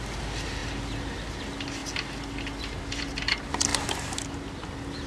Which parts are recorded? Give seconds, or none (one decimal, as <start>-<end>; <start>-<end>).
0.0-5.1